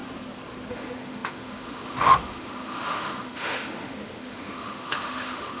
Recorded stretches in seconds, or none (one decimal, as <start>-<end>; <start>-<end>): 0.0-0.7